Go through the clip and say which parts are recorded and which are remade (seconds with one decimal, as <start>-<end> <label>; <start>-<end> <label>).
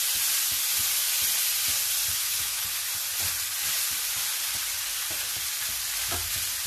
0.0-2.1 recorded; 2.1-2.6 remade; 2.6-6.7 recorded